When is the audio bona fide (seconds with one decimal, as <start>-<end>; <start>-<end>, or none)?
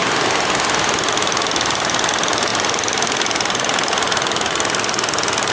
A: 0.0-5.5